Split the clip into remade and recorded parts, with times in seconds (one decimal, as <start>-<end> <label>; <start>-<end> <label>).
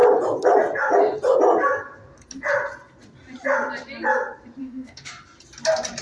0.0-4.6 recorded; 4.6-5.1 remade; 5.1-6.0 recorded